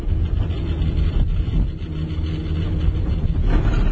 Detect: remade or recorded recorded